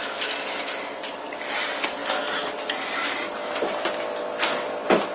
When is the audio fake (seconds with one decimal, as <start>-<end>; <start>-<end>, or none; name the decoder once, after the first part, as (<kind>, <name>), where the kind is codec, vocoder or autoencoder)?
none